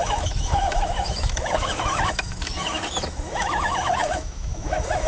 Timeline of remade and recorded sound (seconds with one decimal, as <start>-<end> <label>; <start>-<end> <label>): 0.0-5.1 remade